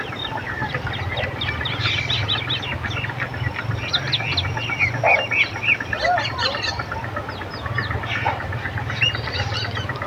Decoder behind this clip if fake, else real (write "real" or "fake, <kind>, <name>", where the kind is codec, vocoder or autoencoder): real